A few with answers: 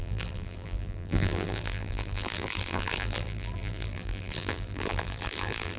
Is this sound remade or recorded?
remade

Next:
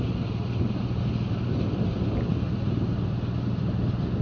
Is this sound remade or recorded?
recorded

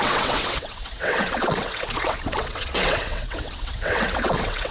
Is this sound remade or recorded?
remade